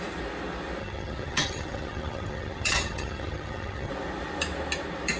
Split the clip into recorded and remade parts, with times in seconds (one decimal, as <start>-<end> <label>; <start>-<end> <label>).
0.0-0.8 recorded; 0.8-3.9 remade; 3.9-5.2 recorded